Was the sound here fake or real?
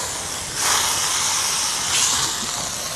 real